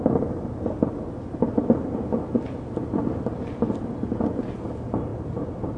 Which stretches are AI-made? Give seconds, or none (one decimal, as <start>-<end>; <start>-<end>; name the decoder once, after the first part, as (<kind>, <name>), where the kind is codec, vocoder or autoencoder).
none